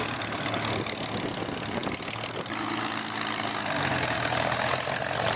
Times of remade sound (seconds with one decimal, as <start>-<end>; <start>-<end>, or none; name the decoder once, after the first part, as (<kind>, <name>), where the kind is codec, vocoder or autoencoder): none